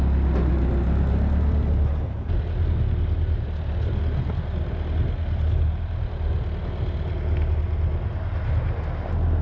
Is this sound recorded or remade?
recorded